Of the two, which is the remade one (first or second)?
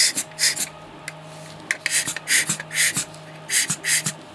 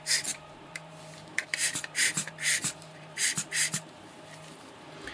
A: second